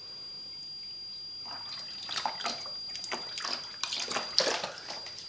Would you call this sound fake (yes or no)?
no